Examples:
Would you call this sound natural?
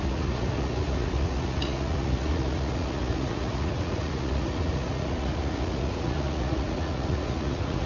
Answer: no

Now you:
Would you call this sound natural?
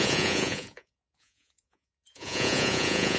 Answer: no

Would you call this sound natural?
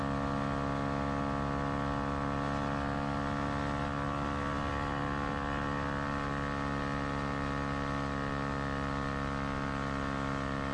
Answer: yes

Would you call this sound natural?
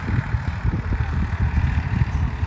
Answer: no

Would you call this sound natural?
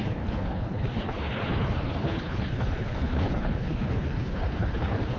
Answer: no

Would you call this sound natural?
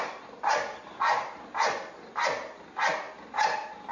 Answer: yes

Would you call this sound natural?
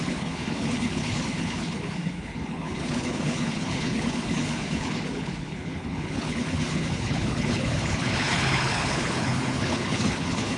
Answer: no